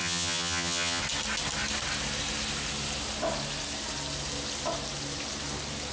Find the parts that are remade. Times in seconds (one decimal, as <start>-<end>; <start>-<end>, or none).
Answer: 0.0-1.0